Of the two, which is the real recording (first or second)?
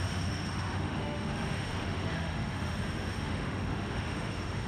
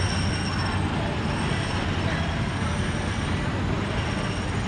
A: second